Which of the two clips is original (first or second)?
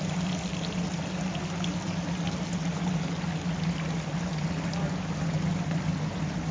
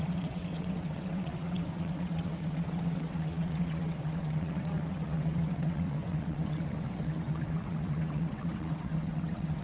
first